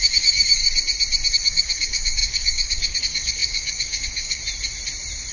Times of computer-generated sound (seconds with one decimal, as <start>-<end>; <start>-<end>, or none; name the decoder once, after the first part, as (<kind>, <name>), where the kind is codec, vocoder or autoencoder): 0.0-0.6 (codec, DAC); 1.3-4.4

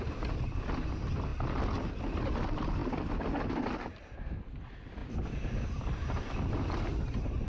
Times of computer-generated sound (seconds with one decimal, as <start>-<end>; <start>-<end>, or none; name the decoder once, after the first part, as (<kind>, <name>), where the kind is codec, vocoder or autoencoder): none

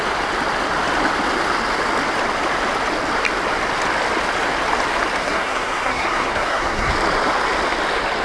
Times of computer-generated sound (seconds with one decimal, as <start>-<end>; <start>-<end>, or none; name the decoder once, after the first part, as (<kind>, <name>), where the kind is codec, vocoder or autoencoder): 5.2-6.9 (codec, SNAC)

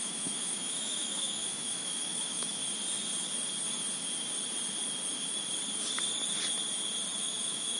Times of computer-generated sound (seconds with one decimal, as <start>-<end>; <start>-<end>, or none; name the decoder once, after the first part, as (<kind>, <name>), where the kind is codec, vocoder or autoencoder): 0.0-2.6 (autoencoder, DAC-VAE); 7.2-7.8

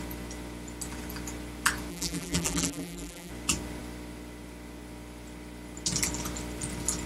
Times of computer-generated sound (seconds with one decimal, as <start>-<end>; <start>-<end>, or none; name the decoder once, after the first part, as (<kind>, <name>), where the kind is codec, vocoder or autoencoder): 1.9-3.3 (vocoder, BigVGAN v2)